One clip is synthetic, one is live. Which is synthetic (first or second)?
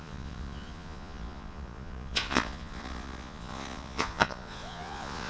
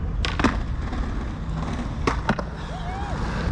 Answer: first